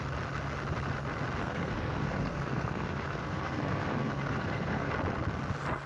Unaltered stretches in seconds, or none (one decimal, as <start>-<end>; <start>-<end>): 0.0-1.4; 4.9-5.9